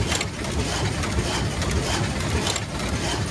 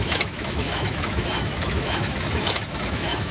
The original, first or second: first